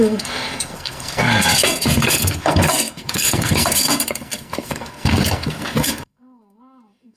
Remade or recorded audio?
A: remade